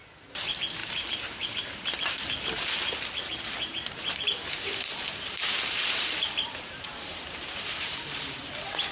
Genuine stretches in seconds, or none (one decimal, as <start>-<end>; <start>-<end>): 0.0-0.8; 2.6-3.3; 8.5-8.9